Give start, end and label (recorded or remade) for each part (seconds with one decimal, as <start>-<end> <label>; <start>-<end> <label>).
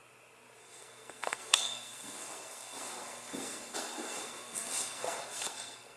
0.0-0.6 recorded; 0.6-6.0 remade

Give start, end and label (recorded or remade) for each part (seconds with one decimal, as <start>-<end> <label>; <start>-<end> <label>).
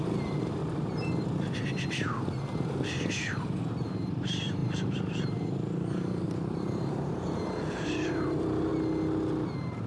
0.0-0.6 remade; 0.6-2.0 recorded; 2.0-8.7 remade; 8.7-9.9 recorded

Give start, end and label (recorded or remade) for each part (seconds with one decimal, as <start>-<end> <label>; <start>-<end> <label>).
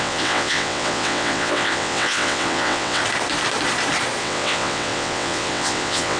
0.0-3.0 remade; 3.0-4.2 recorded; 4.2-6.2 remade